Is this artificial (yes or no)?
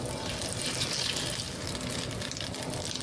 no